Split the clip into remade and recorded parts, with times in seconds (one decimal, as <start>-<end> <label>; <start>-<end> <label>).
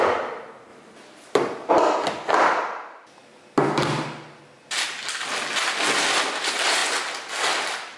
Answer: 0.0-8.0 recorded